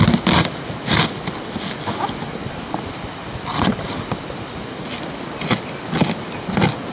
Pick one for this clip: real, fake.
real